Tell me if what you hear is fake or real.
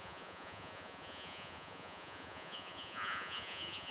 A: fake